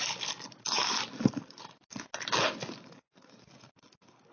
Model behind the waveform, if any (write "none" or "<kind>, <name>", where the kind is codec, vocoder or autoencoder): none